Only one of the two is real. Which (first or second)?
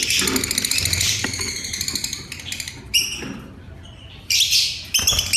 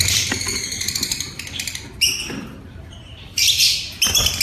first